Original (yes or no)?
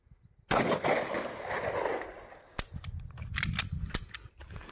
yes